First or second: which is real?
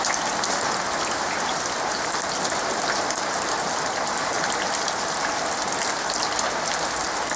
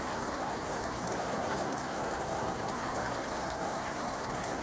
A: first